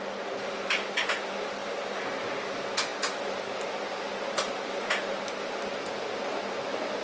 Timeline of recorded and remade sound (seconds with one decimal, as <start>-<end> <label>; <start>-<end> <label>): 0.0-7.0 recorded